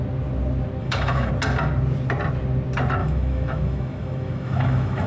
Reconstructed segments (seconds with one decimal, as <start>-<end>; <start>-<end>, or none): 0.8-1.3; 3.0-5.1